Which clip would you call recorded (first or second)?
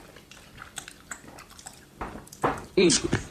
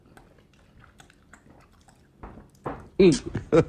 second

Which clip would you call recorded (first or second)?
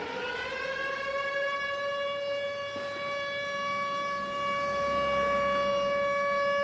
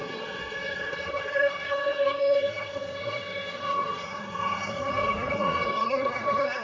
first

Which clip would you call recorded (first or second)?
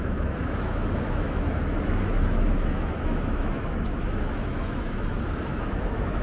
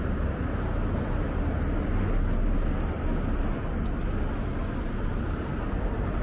second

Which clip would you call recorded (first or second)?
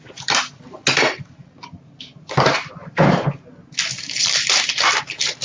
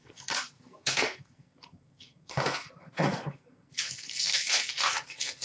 first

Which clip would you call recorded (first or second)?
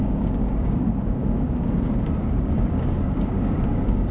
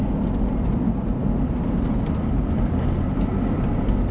second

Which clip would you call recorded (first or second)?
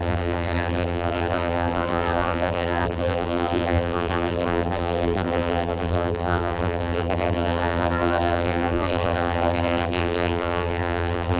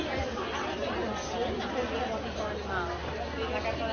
second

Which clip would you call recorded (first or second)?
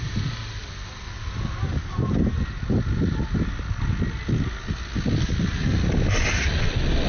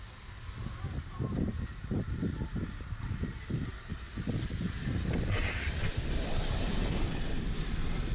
first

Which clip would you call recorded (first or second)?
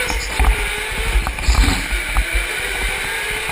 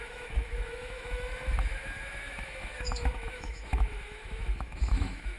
first